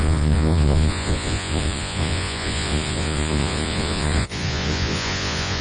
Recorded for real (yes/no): no